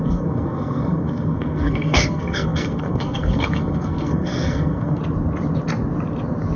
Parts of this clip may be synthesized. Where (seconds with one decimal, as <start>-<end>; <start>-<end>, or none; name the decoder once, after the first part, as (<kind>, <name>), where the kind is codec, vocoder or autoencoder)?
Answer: 0.0-5.0 (codec, SNAC)

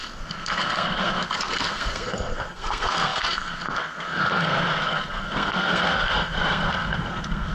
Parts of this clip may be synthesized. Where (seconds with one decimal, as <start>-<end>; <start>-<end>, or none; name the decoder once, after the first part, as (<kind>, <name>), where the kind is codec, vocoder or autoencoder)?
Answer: 0.0-7.5 (codec, SNAC)

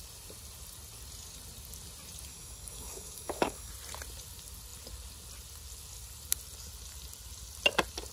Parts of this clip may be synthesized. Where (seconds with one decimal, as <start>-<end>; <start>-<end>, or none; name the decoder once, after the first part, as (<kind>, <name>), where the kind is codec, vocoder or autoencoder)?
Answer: 2.3-3.7 (codec, DAC)

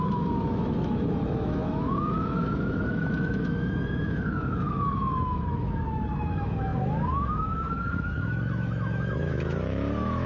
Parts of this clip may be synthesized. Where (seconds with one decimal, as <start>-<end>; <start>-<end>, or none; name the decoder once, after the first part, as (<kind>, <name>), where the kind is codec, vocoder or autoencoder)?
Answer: 0.0-10.3 (autoencoder, DAC-VAE)

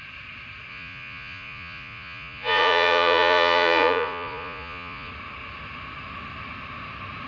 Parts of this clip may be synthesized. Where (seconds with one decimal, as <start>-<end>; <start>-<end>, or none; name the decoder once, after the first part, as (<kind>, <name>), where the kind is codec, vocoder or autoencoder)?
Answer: 0.7-5.1 (vocoder, Vocos)